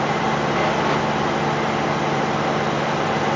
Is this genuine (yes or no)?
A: yes